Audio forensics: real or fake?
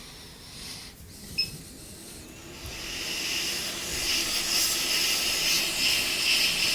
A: real